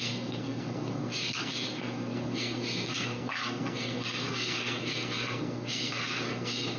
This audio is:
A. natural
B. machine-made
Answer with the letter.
B